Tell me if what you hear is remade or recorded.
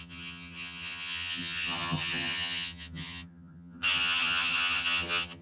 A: remade